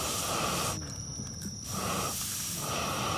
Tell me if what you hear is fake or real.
real